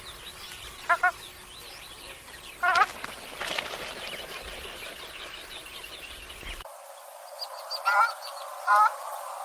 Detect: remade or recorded recorded